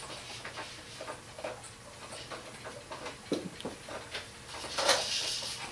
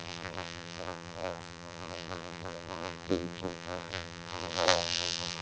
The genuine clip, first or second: first